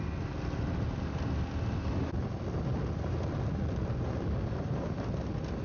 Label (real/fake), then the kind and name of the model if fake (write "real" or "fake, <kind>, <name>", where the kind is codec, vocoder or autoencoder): real